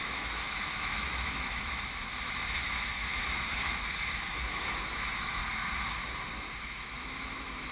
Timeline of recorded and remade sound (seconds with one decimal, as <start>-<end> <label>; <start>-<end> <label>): 0.0-5.4 remade; 5.4-6.6 recorded; 6.6-7.7 remade